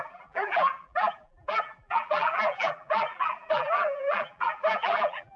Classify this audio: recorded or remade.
remade